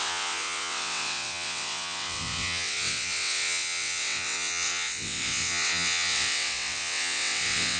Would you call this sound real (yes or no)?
no